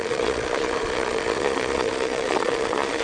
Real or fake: fake